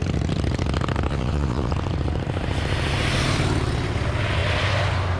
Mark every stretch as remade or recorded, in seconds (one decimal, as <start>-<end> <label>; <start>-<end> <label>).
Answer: 0.0-1.1 recorded; 1.1-1.7 remade; 1.7-5.2 recorded